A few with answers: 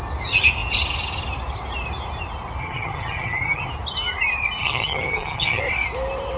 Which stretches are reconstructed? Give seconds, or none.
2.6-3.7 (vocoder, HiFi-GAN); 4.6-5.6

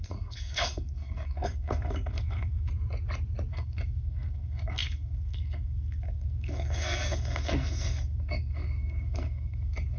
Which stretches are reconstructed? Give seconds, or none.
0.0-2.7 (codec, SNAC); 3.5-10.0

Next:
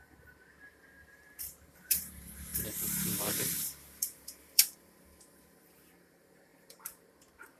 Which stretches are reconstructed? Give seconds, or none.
0.0-7.6 (vocoder, BigVGAN v2)

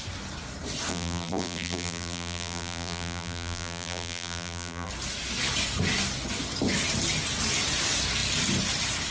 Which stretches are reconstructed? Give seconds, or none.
0.9-4.9 (vocoder, BigVGAN v2)